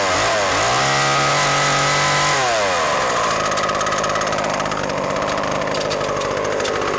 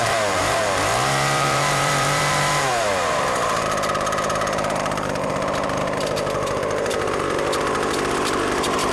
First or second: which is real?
first